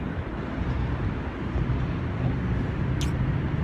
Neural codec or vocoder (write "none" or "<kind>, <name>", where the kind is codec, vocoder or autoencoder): none